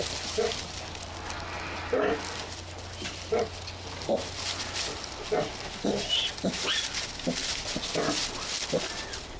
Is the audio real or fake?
real